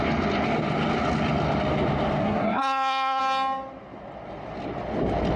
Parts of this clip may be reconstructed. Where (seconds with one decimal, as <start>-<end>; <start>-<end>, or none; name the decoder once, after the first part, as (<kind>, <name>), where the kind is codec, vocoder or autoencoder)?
2.2-3.2 (codec, SNAC)